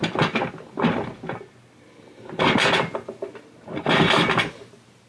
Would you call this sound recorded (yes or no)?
yes